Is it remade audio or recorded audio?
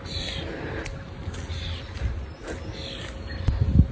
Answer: recorded